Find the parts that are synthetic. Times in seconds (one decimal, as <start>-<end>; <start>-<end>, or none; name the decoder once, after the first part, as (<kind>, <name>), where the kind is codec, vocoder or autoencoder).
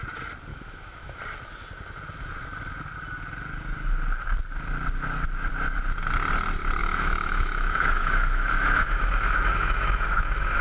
0.5-1.2 (autoencoder, DAC-VAE); 6.8-10.6